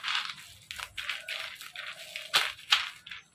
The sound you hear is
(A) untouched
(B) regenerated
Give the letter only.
A